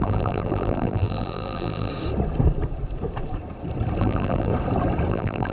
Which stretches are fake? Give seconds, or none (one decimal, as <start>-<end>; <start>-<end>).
0.0-1.9; 4.0-4.5; 5.1-5.5